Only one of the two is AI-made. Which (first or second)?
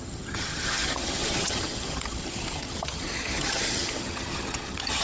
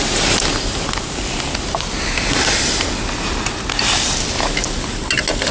first